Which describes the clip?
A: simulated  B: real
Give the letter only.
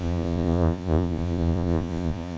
A